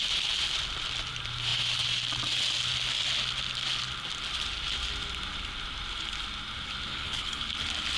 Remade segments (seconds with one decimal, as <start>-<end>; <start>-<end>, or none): 6.9-7.4